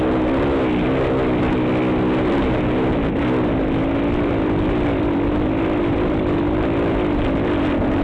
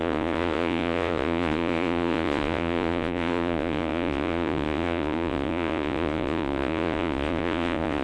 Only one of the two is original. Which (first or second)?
first